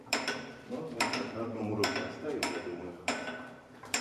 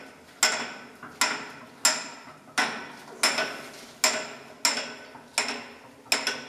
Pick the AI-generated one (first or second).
first